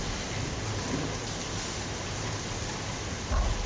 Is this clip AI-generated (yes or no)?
no